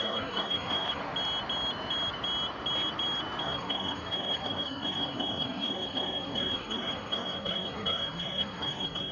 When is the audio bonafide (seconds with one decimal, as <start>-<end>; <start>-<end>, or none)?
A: 1.0-3.4